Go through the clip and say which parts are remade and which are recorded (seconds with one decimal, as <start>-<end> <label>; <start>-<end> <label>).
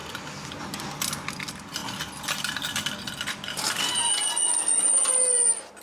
0.0-5.8 recorded